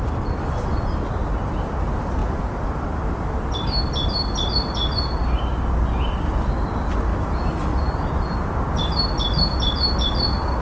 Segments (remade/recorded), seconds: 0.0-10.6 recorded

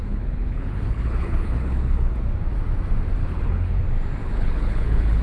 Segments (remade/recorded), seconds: 0.0-2.1 remade; 2.1-3.2 recorded; 3.2-3.8 remade; 3.8-4.2 recorded; 4.2-5.2 remade